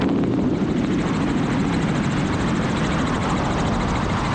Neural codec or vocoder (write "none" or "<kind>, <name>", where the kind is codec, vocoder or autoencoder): none